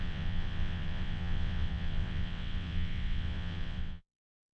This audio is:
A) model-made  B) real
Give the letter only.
A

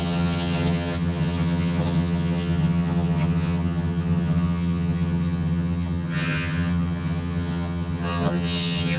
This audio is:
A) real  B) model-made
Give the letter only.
B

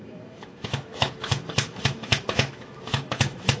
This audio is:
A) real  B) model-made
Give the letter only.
B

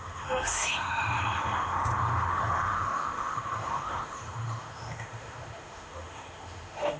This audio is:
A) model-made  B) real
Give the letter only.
A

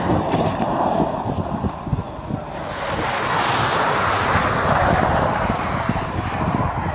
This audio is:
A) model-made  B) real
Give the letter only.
B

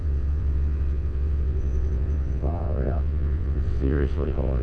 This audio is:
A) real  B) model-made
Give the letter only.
B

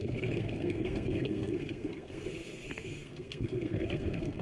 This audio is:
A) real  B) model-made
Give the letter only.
B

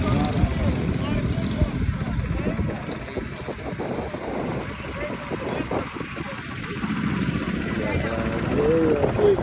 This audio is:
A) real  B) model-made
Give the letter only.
A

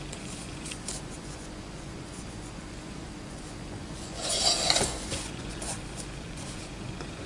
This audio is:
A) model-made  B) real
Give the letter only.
A